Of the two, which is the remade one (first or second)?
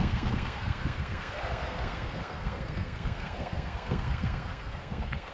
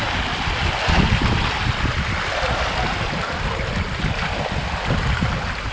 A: first